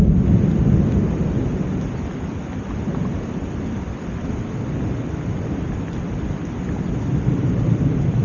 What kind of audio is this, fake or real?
real